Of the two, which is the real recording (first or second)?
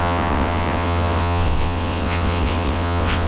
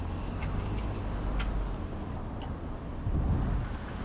second